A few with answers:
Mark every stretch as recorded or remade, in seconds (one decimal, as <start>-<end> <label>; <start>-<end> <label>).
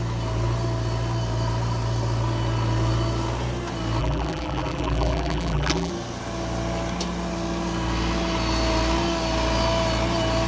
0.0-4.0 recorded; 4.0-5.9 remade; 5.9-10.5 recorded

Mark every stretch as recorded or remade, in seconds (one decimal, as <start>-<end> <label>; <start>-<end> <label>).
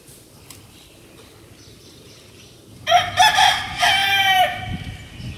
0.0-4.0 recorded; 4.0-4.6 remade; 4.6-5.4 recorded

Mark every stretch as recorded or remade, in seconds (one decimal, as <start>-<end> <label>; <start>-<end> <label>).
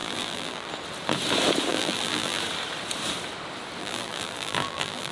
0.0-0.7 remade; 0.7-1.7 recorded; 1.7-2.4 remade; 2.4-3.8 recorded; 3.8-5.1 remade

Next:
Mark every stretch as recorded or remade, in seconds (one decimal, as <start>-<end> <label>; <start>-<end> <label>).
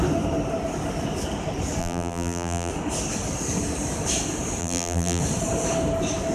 0.0-1.8 recorded; 1.8-2.7 remade; 2.7-4.6 recorded; 4.6-5.2 remade; 5.2-6.3 recorded